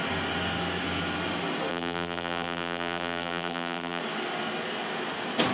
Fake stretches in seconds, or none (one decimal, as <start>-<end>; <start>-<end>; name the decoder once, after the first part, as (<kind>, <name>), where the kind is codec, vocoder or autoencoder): 1.7-4.0 (vocoder, BigVGAN v2)